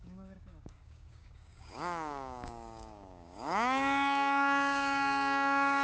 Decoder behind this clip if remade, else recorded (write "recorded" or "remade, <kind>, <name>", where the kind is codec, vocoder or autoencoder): remade, codec, DAC